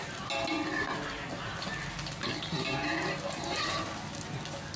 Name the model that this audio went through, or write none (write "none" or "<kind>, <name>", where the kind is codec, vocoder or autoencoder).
none